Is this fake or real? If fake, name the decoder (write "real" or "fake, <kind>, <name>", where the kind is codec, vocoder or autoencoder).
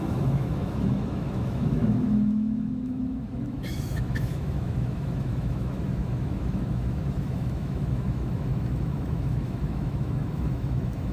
fake, autoencoder, DAC-VAE